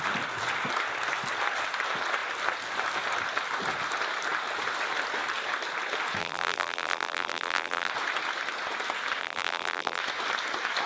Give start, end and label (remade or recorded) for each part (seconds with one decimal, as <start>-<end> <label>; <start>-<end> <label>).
0.0-6.2 recorded; 6.2-7.9 remade; 7.9-9.2 recorded; 9.2-10.0 remade; 10.0-10.9 recorded